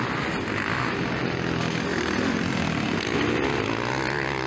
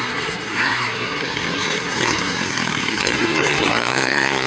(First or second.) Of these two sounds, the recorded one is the first